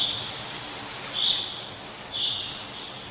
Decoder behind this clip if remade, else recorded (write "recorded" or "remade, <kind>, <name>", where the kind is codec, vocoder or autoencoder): recorded